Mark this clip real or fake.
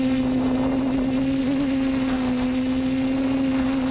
real